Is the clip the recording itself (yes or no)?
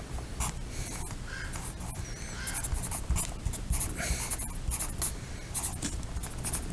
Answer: yes